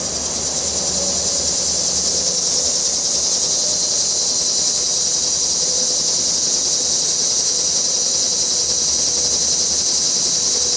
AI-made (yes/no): no